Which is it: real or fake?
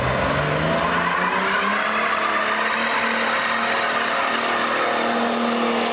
real